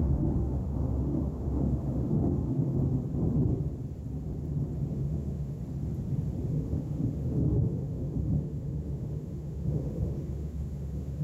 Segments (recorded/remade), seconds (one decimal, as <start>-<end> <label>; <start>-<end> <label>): 0.0-2.8 remade; 2.8-4.9 recorded; 4.9-5.6 remade; 5.6-6.5 recorded; 6.5-11.2 remade